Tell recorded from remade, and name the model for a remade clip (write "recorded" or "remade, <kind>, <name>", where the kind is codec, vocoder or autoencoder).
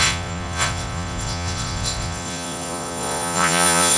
remade, vocoder, Vocos